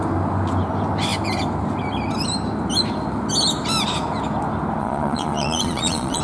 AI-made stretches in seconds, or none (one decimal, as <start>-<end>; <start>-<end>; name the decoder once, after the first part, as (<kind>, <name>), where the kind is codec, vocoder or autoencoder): 4.8-6.2 (vocoder, Vocos)